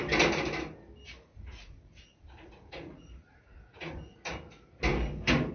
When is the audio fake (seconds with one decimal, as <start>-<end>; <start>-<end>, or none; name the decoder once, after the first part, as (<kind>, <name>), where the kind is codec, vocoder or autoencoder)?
1.3-4.2 (vocoder, Vocos)